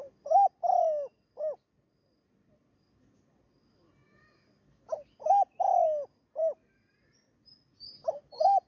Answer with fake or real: real